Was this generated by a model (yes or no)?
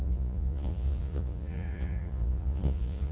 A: yes